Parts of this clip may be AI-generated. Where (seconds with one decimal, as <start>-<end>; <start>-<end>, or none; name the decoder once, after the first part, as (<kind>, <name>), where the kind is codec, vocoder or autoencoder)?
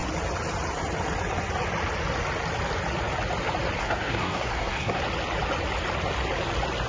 3.8-5.0 (codec, SNAC)